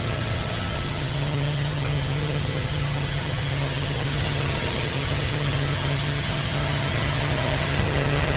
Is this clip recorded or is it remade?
remade